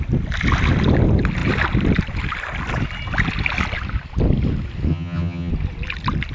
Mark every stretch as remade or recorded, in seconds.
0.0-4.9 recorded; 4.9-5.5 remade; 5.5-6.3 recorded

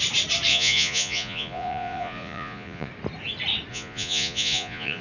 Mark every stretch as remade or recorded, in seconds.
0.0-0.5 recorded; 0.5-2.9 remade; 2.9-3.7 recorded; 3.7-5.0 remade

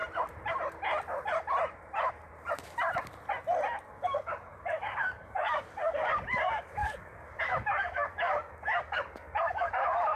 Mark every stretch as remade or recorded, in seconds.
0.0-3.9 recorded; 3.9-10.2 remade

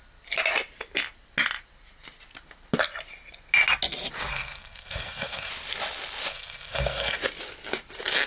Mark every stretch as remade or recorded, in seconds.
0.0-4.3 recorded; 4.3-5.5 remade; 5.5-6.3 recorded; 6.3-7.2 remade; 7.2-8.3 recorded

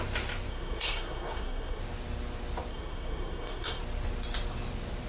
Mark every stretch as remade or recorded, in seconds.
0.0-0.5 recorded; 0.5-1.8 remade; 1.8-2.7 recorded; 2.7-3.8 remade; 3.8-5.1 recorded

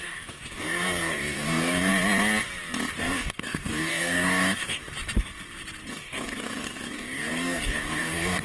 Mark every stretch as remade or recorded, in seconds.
0.0-1.9 remade; 1.9-3.0 recorded; 3.0-4.8 remade; 4.8-5.9 recorded; 5.9-8.4 remade

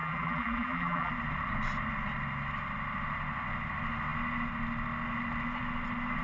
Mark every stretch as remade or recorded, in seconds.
0.0-1.1 remade; 1.1-6.2 recorded

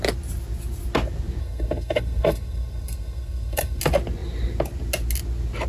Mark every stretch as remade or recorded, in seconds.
0.0-1.4 recorded; 1.4-3.8 remade; 3.8-5.7 recorded